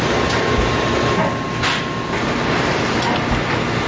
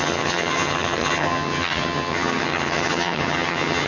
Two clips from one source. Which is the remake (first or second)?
second